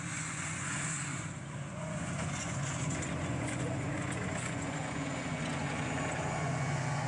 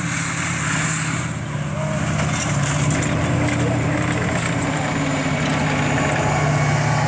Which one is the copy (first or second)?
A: first